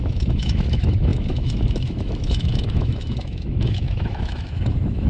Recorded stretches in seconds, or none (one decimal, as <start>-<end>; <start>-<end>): none